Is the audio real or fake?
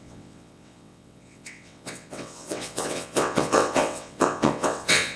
fake